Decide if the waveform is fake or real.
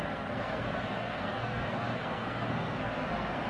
fake